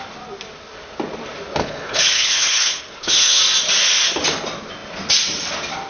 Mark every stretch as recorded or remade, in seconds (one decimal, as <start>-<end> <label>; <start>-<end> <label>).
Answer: 0.0-1.6 recorded; 1.6-3.4 remade; 3.4-5.9 recorded